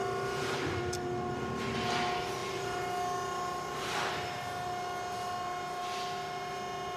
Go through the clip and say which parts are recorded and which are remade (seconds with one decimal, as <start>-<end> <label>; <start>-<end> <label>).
0.0-0.8 remade; 0.8-7.0 recorded